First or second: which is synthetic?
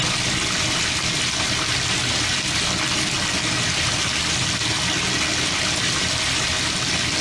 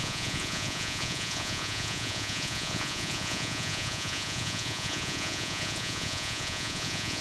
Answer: second